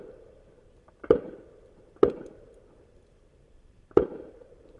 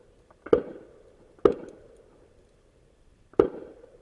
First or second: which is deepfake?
first